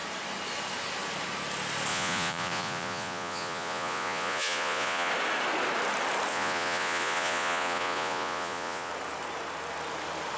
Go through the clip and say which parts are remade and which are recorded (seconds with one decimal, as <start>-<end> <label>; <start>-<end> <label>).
0.0-1.9 recorded; 1.9-5.1 remade; 5.1-6.3 recorded; 6.3-8.9 remade; 8.9-10.4 recorded